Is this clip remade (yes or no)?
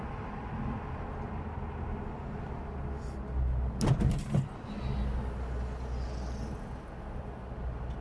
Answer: no